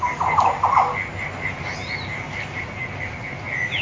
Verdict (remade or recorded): recorded